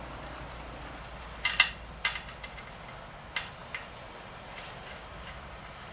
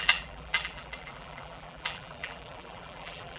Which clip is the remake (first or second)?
second